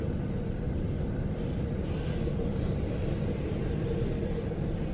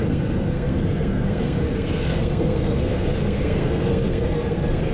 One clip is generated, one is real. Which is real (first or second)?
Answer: first